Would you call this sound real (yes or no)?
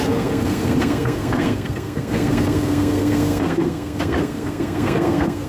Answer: no